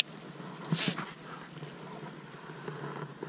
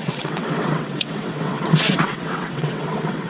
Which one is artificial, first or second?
second